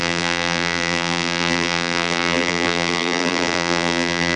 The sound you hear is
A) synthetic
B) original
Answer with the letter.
A